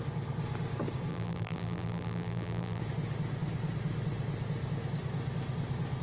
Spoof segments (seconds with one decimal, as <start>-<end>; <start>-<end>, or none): 1.1-2.8